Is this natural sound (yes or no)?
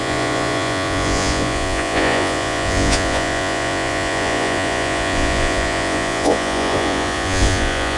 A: no